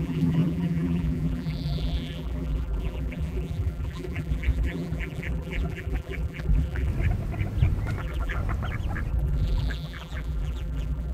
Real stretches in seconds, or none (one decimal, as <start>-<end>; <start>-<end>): 6.9-8.0; 8.4-9.1